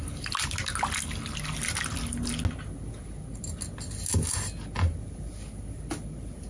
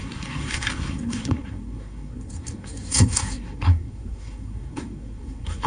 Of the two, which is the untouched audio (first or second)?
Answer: first